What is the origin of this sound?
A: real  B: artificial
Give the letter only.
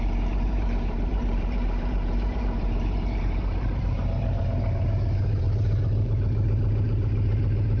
B